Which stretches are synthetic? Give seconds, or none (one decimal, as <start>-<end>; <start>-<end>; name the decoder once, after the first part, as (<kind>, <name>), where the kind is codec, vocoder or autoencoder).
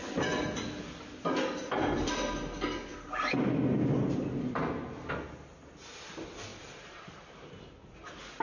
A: 6.5-7.1 (vocoder, BigVGAN v2)